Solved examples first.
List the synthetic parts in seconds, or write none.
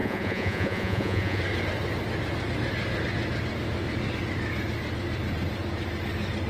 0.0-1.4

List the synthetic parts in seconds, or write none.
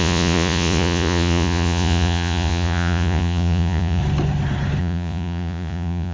0.0-4.0; 4.8-6.1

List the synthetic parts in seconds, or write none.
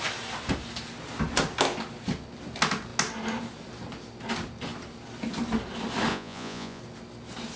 6.1-6.8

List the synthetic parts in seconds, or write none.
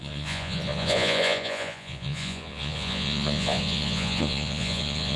0.0-5.2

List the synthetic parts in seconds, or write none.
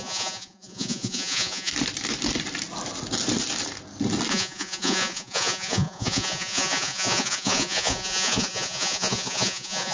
0.0-1.7; 4.3-9.9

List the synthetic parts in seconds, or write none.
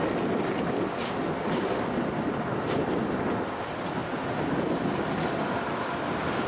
none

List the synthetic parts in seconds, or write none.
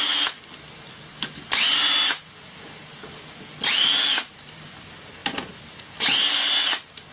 none